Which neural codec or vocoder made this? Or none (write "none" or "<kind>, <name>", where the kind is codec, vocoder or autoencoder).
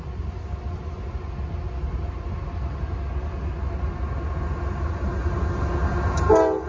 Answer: none